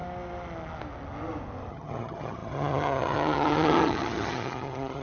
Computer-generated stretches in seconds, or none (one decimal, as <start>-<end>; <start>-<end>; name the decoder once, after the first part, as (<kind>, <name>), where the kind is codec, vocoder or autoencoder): 1.7-5.0 (vocoder, HiFi-GAN)